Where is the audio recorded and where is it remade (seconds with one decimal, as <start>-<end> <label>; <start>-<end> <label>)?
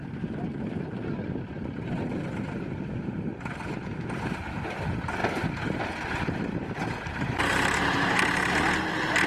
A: 0.0-0.5 recorded; 0.5-3.2 remade; 3.2-5.2 recorded; 5.2-8.5 remade; 8.5-9.3 recorded